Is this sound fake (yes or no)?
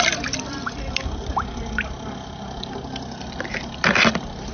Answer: no